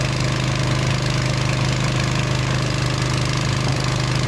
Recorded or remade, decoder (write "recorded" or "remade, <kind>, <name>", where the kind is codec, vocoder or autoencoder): recorded